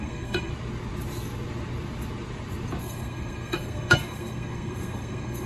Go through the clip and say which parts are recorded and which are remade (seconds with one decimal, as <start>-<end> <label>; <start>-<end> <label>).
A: 0.0-0.5 remade; 0.5-2.8 recorded; 2.8-5.5 remade